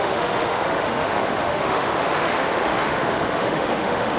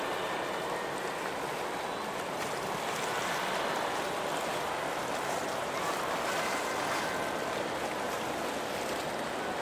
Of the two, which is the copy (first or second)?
first